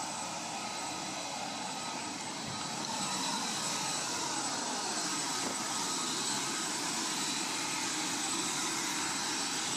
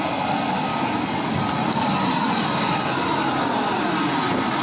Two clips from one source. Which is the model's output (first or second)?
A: first